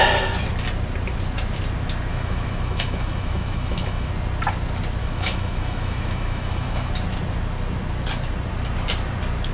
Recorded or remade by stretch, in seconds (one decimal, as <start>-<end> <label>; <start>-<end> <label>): 0.0-2.1 recorded; 2.1-4.1 remade; 4.1-5.0 recorded; 5.0-6.9 remade; 6.9-9.5 recorded